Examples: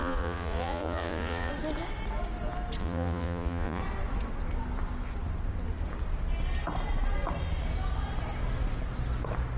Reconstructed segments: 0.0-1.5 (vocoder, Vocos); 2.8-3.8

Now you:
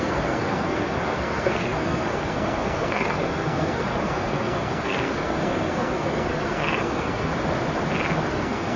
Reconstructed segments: 0.0-7.3 (codec, SNAC); 8.3-8.8

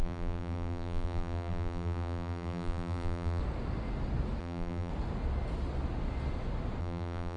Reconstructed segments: 0.0-3.4 (vocoder, BigVGAN v2); 4.4-4.9; 6.8-7.4

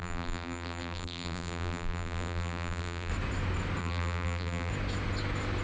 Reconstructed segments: 0.0-3.1 (vocoder, BigVGAN v2); 3.8-4.7

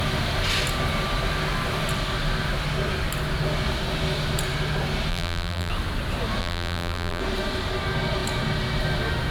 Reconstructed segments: 5.1-5.7 (vocoder, BigVGAN v2); 6.4-7.2

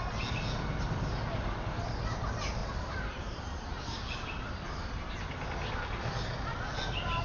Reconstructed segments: 2.6-4.0 (vocoder, BigVGAN v2)